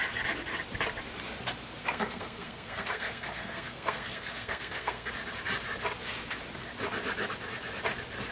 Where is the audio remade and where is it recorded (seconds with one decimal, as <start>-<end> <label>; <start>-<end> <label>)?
0.0-1.8 recorded; 1.8-5.1 remade; 5.1-8.3 recorded